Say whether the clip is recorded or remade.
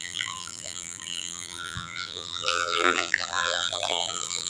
remade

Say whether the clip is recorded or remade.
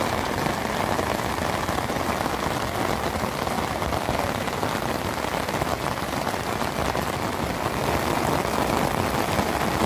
recorded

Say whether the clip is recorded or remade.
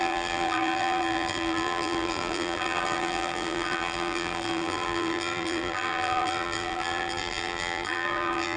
remade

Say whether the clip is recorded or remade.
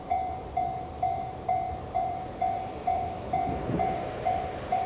remade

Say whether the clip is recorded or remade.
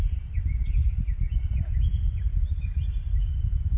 remade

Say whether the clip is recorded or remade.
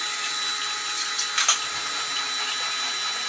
recorded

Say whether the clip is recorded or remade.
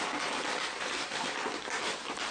remade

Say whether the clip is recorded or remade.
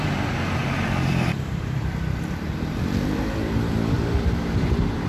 remade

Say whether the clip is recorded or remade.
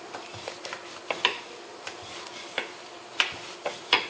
remade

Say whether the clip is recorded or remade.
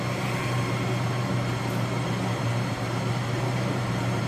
remade